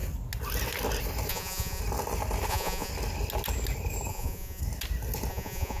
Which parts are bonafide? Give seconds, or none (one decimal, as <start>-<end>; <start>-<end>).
0.0-1.3; 1.8-2.5; 2.9-4.1; 4.6-5.3